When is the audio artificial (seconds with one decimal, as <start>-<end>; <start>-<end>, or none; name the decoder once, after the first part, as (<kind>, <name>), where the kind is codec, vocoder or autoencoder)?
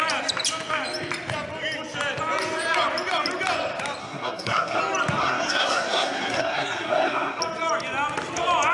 4.0-4.8 (codec, SNAC); 5.2-7.4